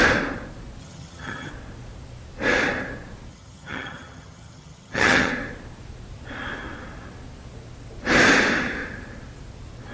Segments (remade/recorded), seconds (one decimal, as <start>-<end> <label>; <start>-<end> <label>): 0.0-0.8 recorded; 0.8-1.5 remade; 1.5-3.3 recorded; 3.3-5.3 remade; 5.3-9.9 recorded